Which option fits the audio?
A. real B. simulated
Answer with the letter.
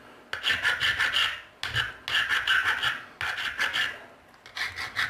A